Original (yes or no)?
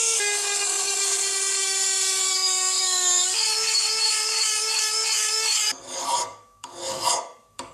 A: no